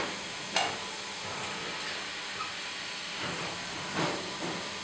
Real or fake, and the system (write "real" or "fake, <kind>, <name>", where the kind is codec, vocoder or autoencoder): real